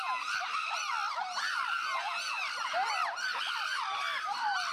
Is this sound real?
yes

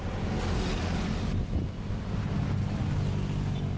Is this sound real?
yes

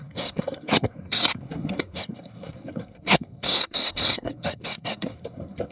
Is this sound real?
no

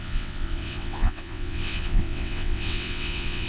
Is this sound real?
no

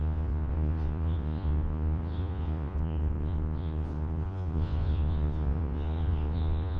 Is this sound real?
no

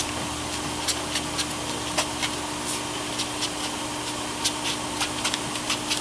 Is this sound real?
yes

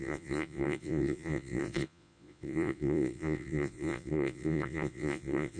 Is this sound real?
no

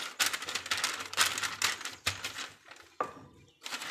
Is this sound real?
yes